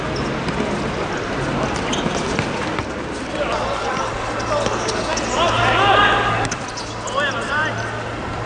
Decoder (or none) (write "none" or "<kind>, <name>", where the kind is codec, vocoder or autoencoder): none